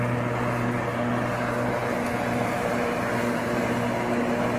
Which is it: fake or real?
real